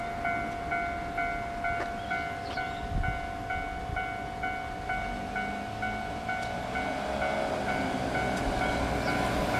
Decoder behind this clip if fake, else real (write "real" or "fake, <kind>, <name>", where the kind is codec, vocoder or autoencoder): real